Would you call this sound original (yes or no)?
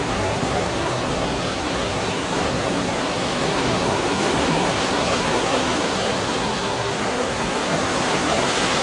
no